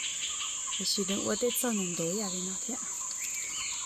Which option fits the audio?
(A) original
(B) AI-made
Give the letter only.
A